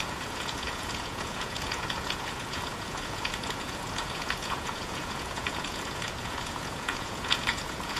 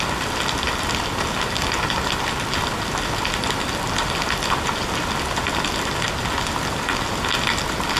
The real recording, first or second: second